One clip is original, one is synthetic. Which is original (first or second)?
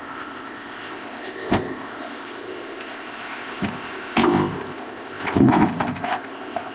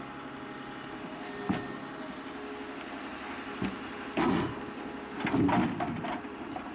second